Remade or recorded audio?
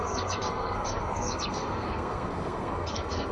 remade